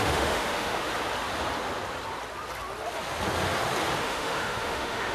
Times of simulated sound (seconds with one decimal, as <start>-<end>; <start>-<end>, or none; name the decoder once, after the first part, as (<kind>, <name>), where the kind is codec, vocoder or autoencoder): 0.0-0.9 (autoencoder, DAC-VAE); 4.0-5.1